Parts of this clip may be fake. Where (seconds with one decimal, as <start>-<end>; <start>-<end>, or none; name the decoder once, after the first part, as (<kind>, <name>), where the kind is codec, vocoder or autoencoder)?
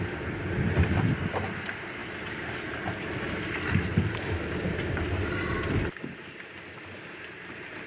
none